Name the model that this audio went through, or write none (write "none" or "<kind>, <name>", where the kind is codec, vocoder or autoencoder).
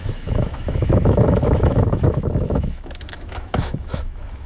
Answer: autoencoder, DAC-VAE